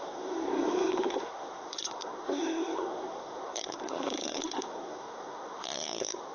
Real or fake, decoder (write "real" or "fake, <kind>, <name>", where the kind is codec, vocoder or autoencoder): fake, codec, SNAC